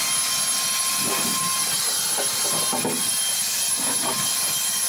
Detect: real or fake real